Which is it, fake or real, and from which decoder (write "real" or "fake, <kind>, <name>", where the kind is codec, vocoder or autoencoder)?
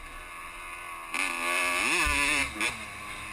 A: real